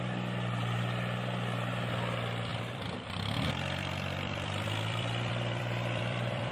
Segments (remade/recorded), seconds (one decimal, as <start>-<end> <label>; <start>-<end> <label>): 0.0-2.5 recorded; 2.5-6.5 remade